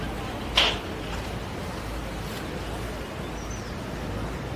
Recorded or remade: recorded